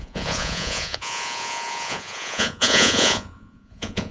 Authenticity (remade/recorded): remade